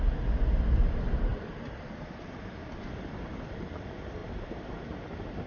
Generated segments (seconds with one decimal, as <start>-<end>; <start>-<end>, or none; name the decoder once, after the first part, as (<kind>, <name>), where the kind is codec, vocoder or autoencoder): 4.2-4.8 (vocoder, BigVGAN v2)